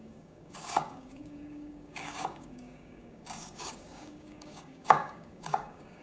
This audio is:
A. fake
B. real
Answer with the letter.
A